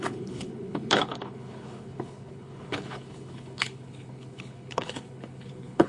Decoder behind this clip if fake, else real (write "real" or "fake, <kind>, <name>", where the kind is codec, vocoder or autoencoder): fake, codec, HILCodec